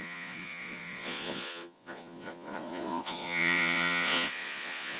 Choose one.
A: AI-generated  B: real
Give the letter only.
A